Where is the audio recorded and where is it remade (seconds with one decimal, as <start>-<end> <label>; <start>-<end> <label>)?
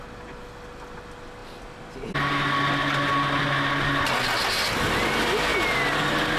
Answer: 0.0-6.4 recorded